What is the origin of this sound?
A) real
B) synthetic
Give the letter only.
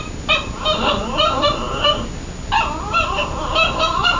A